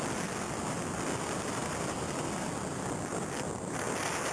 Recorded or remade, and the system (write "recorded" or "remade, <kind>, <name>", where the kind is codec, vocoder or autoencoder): recorded